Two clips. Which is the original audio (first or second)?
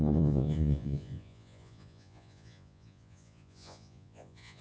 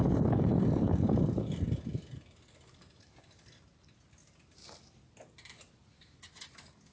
second